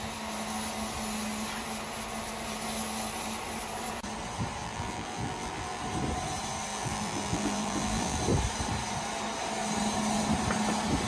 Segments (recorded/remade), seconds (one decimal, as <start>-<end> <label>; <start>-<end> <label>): 0.0-4.6 recorded; 4.6-5.8 remade; 5.8-6.7 recorded; 6.7-8.2 remade; 8.2-11.1 recorded